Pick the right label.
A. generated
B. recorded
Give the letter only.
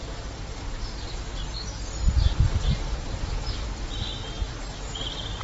B